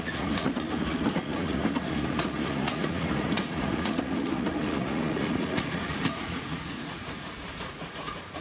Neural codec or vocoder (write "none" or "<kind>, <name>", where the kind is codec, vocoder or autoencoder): vocoder, Vocos